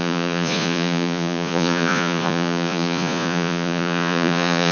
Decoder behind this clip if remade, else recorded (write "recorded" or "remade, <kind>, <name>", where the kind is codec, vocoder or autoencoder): remade, vocoder, Vocos